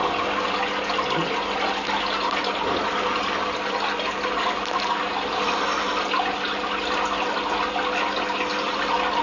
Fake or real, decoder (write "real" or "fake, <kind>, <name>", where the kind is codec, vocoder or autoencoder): real